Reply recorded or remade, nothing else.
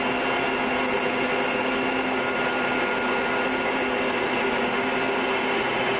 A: recorded